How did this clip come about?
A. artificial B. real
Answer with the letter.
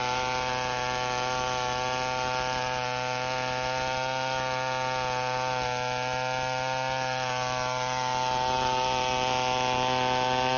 B